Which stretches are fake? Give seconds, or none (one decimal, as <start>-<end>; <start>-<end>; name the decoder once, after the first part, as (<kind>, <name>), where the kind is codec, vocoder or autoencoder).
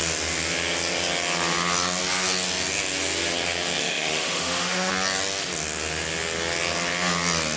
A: 3.8-4.9 (autoencoder, DAC-VAE)